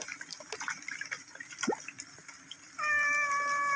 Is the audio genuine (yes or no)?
yes